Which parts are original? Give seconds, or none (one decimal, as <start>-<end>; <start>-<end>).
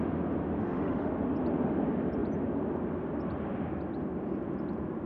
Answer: 0.0-0.6; 1.1-5.1